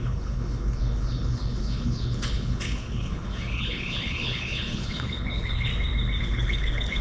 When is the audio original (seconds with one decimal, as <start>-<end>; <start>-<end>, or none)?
5.7-6.2